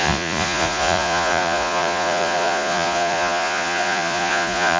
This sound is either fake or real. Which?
fake